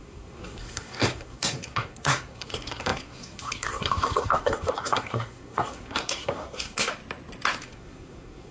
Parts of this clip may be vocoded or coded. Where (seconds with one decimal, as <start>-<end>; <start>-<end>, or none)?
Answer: 0.0-6.9; 7.6-8.5